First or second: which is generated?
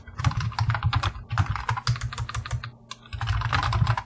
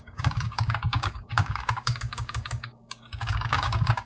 second